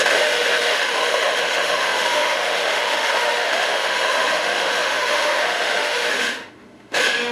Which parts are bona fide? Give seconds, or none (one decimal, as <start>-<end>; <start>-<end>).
none